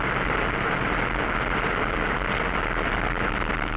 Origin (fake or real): real